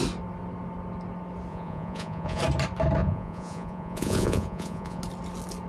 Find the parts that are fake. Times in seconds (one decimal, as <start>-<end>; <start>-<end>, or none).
1.5-2.4; 3.0-5.0